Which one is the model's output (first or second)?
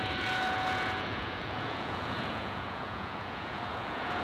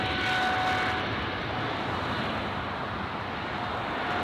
first